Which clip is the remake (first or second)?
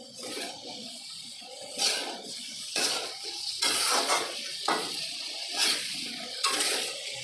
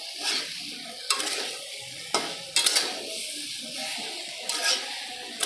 first